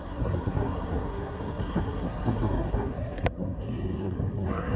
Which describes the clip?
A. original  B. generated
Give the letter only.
B